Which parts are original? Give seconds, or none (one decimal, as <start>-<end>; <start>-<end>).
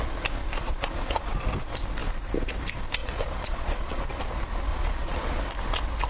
0.0-0.6; 1.3-3.0; 4.1-4.7; 5.4-6.1